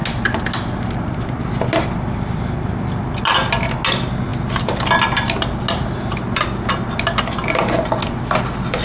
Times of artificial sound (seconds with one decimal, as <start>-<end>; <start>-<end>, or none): none